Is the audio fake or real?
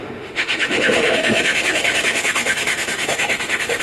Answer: fake